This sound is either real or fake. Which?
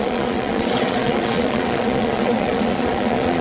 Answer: fake